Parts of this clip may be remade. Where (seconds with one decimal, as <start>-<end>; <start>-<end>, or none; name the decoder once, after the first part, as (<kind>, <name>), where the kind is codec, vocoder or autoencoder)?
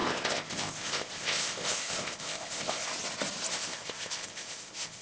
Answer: 0.0-2.9 (codec, ZipCodec); 3.5-5.0